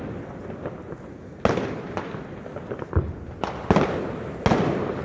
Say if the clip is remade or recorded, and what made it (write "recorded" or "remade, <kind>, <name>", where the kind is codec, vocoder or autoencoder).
recorded